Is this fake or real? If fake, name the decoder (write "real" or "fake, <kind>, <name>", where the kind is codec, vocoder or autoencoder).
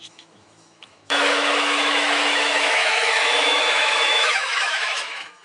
fake, autoencoder, DAC-VAE